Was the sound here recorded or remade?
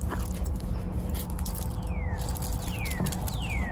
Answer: recorded